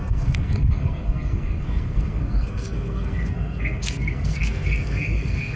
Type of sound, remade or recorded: remade